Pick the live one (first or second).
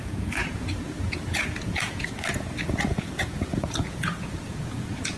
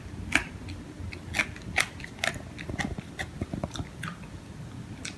second